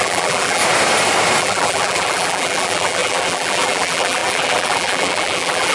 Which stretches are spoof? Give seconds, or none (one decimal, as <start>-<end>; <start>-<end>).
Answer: 0.0-0.6; 1.4-5.7

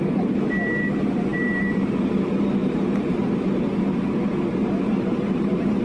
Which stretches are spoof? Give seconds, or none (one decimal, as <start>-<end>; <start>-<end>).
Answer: 1.3-1.9; 2.6-3.6; 4.6-5.8

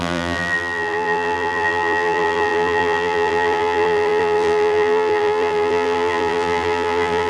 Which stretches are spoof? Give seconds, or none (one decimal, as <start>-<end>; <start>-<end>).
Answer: 0.0-7.3

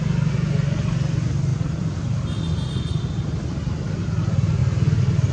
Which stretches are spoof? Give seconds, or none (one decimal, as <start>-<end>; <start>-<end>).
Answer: none

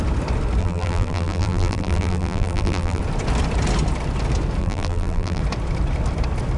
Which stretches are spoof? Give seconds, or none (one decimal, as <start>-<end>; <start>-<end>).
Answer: 0.6-3.0; 4.6-5.4

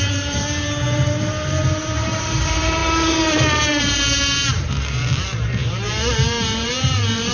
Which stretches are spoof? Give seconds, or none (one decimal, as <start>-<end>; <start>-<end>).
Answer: 0.0-7.3

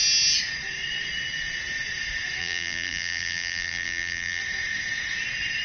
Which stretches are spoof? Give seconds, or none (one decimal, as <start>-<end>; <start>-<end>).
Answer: 2.4-4.4

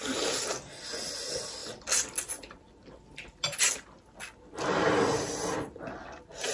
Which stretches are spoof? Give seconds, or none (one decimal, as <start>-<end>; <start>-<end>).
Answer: none